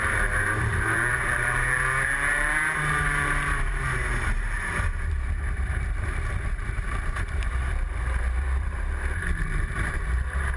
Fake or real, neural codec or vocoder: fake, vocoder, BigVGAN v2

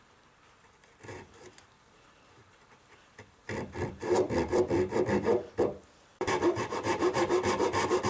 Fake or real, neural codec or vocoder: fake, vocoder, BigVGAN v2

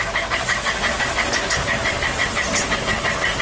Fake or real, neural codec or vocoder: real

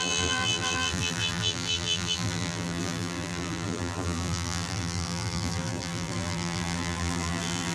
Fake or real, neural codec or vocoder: fake, vocoder, BigVGAN v2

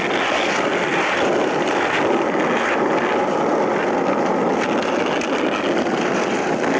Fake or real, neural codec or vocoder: real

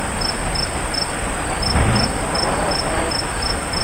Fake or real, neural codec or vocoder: real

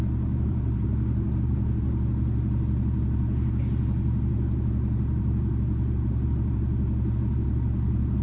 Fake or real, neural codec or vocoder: fake, vocoder, BigVGAN v2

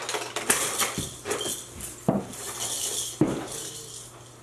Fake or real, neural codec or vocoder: real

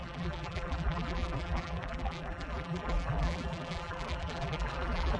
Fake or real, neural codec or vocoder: fake, vocoder, BigVGAN v2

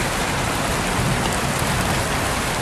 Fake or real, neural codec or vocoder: real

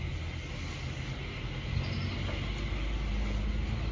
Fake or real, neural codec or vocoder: real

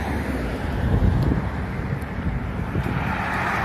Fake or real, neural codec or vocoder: fake, vocoder, BigVGAN v2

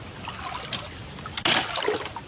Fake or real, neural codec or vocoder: real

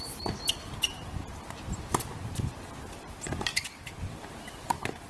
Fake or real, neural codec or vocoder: real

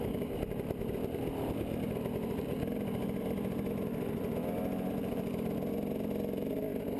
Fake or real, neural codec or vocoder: real